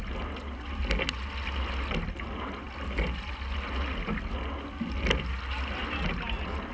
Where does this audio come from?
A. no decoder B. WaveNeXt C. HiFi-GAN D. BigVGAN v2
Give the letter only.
A